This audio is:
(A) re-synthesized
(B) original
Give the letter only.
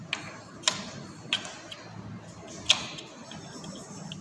B